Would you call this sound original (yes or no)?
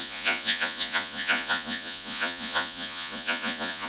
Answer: no